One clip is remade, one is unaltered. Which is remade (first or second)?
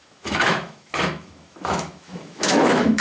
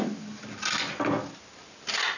first